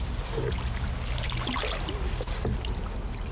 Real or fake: real